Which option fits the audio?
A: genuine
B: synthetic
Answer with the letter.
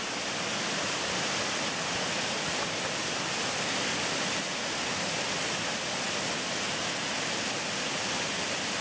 A